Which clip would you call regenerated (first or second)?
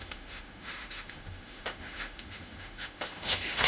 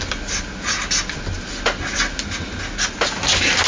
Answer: first